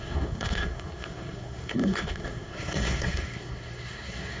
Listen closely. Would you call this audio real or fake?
fake